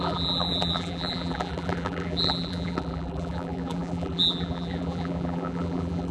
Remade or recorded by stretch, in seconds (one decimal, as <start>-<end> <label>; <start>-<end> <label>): 0.0-6.1 remade